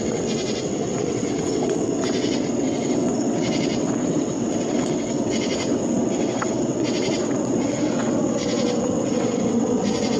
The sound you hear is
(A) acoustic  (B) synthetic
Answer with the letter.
B